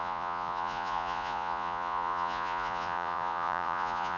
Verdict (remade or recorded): remade